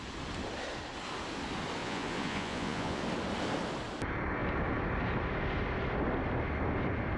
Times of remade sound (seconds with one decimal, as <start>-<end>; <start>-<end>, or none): 1.8-3.0